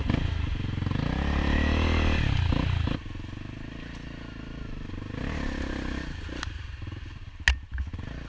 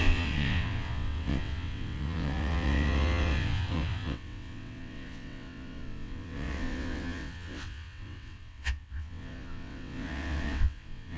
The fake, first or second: second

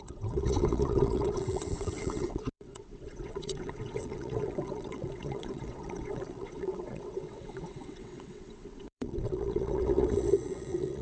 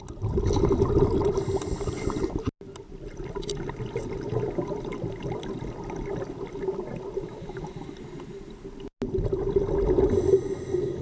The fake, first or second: first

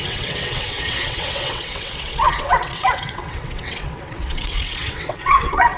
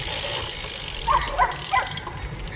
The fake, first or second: first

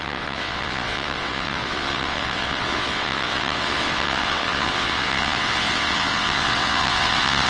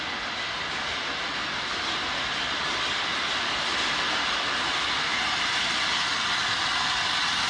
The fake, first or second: first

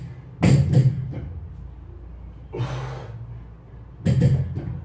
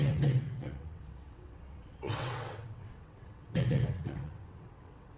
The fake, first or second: second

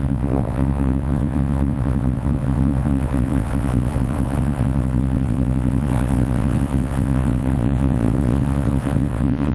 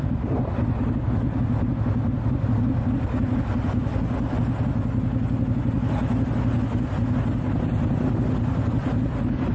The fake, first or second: first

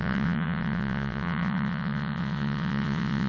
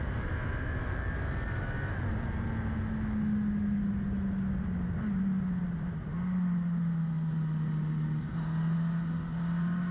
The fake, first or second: first